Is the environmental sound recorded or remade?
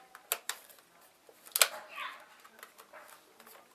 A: recorded